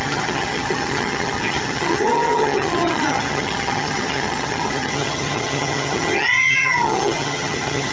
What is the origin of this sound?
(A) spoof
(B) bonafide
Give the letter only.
A